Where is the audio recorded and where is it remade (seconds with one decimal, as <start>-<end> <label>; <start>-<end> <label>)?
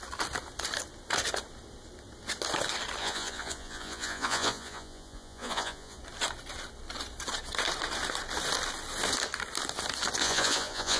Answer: 0.0-3.0 recorded; 3.0-6.0 remade; 6.0-10.2 recorded; 10.2-11.0 remade